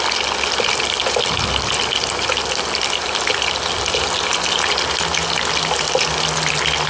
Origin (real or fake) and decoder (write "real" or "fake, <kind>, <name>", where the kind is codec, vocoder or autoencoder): real